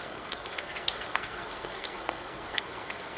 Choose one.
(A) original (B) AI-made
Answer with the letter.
B